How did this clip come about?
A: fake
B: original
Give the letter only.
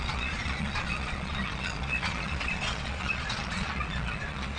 A